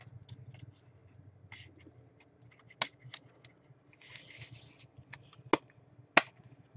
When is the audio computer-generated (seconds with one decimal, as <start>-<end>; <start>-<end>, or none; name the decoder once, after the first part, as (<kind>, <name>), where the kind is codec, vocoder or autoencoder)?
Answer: none